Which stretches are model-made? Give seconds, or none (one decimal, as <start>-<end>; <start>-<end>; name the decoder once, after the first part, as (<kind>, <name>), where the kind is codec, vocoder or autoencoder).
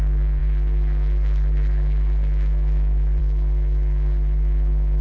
0.0-5.0 (codec, SNAC)